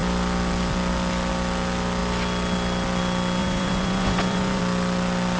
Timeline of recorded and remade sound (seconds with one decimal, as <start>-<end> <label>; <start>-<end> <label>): 0.0-3.4 recorded; 3.4-4.6 remade; 4.6-5.4 recorded